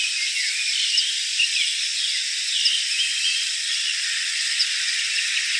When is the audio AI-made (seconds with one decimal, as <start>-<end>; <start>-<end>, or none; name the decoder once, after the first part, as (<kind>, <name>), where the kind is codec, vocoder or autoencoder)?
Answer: 1.5-2.2 (vocoder, Vocos); 3.1-5.1